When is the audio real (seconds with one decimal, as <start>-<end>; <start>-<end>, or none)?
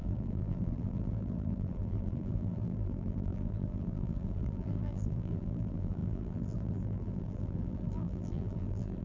none